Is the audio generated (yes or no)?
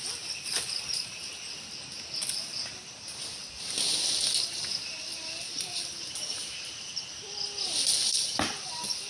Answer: no